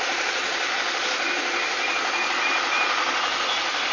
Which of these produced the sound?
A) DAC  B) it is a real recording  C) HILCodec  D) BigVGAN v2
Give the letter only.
B